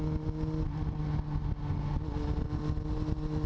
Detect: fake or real real